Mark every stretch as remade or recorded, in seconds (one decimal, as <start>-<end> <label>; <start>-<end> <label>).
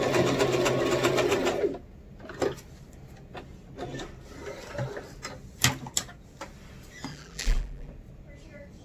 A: 0.0-7.1 recorded; 7.1-7.9 remade; 7.9-8.8 recorded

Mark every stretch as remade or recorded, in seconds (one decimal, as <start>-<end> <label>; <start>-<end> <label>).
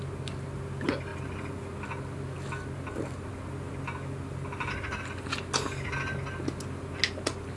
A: 0.0-7.6 recorded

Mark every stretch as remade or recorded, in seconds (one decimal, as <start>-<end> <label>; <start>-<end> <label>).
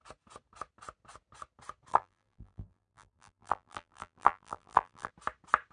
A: 0.0-1.9 recorded; 1.9-5.1 remade; 5.1-5.7 recorded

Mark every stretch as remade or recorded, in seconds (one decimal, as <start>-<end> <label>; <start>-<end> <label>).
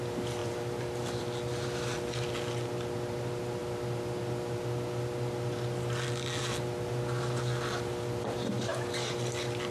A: 0.0-0.4 recorded; 0.4-1.2 remade; 1.2-8.7 recorded; 8.7-9.7 remade